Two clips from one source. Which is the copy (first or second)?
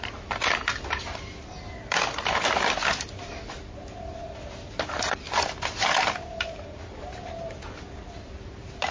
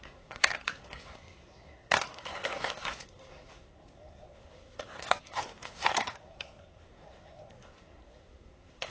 second